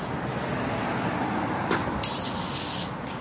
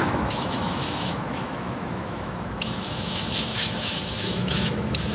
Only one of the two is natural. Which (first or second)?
first